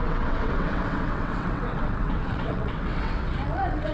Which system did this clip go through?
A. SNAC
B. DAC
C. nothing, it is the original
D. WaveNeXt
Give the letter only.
D